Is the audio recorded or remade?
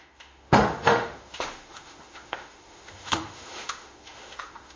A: remade